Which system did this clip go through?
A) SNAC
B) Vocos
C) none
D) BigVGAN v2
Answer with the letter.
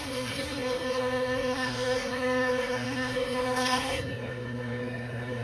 A